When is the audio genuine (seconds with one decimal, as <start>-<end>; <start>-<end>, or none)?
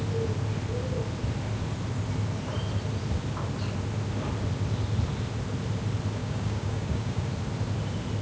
0.0-6.2; 7.3-8.2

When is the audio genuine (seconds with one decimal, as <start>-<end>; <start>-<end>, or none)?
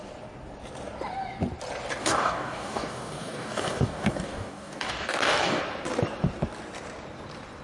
0.0-2.0; 5.6-7.6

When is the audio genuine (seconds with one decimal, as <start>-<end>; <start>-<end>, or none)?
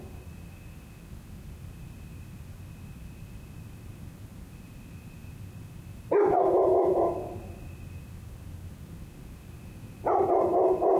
0.0-11.0